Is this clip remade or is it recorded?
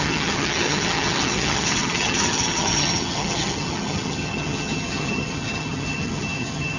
remade